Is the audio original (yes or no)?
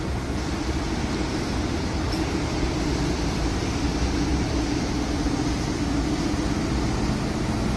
yes